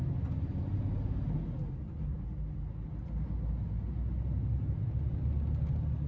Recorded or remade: recorded